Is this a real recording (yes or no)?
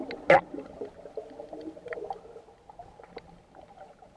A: yes